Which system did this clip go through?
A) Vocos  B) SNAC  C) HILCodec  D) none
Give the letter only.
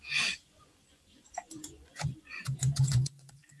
A